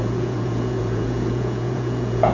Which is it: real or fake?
fake